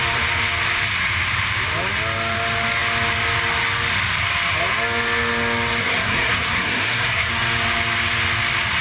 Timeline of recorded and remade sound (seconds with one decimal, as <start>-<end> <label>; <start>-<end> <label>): 0.0-5.8 recorded; 5.8-7.3 remade; 7.3-8.8 recorded